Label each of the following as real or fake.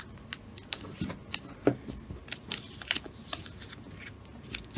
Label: real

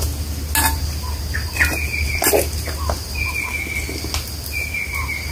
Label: real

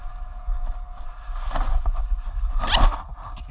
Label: real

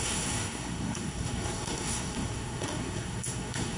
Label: fake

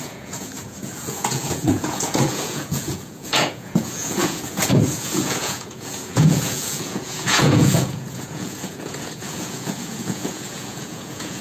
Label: fake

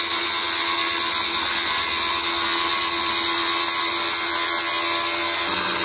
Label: real